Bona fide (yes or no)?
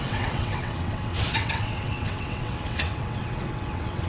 no